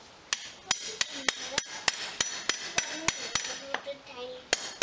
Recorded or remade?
recorded